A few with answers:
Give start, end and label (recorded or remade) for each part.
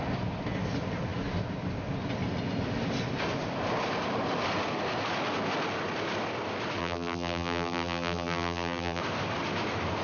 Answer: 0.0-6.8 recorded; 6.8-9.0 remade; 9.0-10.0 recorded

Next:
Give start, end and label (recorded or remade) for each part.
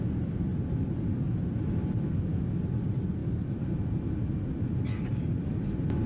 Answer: 0.0-6.1 recorded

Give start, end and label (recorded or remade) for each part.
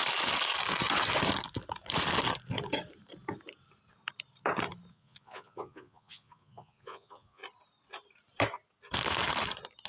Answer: 0.0-4.9 recorded; 4.9-7.4 remade; 7.4-9.9 recorded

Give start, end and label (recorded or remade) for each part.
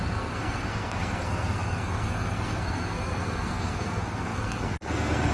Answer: 0.0-5.3 remade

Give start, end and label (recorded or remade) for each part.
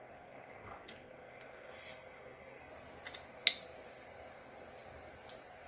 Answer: 0.0-2.7 remade; 2.7-5.7 recorded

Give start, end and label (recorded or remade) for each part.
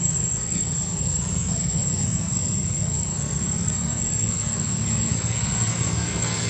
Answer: 0.0-6.5 remade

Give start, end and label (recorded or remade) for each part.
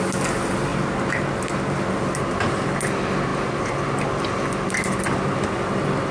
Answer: 0.0-6.1 recorded